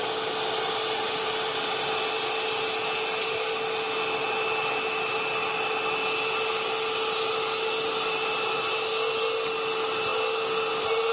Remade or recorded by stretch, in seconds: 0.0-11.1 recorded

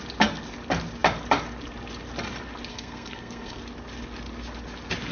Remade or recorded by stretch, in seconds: 0.0-2.7 recorded; 2.7-3.6 remade; 3.6-5.1 recorded